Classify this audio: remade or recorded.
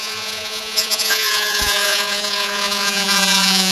remade